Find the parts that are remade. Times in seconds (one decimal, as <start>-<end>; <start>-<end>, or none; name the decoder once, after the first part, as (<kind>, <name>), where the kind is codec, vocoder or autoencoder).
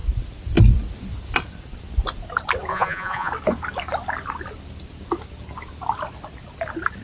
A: 2.7-3.3 (vocoder, Vocos)